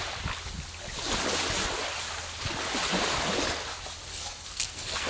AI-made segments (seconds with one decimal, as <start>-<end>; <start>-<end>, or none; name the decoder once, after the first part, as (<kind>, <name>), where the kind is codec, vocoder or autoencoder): 4.1-5.1 (codec, SNAC)